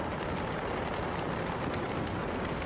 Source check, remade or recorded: recorded